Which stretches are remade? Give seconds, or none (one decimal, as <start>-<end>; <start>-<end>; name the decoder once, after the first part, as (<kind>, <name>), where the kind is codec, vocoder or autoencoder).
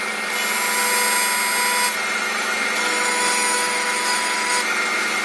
1.9-5.2 (autoencoder, DAC-VAE)